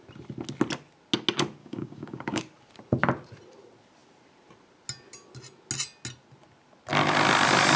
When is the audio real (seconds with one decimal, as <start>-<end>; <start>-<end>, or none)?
0.0-1.6; 2.4-7.8